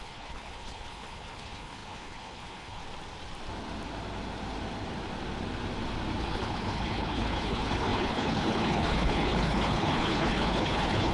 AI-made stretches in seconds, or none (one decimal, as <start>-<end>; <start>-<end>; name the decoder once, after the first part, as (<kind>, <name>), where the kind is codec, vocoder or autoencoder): 0.0-2.8 (codec, HILCodec); 6.2-11.1